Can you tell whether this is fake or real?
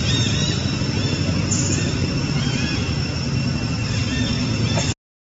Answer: real